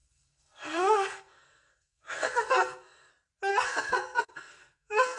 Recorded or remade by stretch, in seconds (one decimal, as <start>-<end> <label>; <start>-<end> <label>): 0.0-3.1 remade; 3.1-3.5 recorded; 3.5-5.2 remade